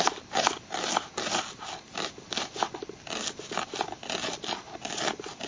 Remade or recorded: recorded